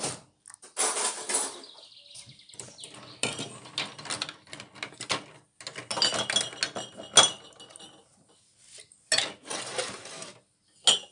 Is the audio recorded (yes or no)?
yes